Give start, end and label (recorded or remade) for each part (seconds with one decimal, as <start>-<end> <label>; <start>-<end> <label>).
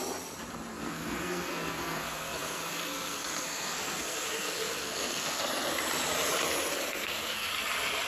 0.0-0.7 recorded; 0.7-5.4 remade; 5.4-6.9 recorded; 6.9-7.5 remade; 7.5-8.1 recorded